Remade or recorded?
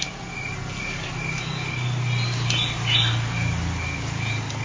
recorded